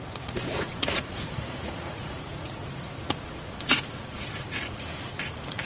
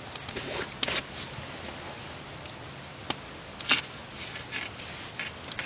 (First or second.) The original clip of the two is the second